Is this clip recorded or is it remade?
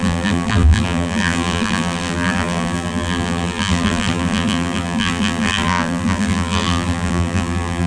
remade